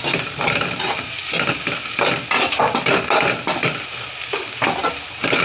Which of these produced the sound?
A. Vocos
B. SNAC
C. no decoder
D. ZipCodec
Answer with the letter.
C